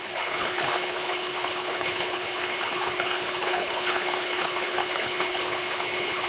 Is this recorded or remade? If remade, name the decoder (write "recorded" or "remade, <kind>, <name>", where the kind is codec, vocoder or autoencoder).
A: remade, codec, HILCodec